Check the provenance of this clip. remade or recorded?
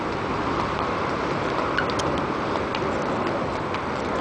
recorded